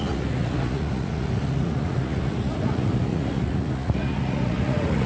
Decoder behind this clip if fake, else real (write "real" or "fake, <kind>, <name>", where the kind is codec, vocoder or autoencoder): fake, vocoder, Vocos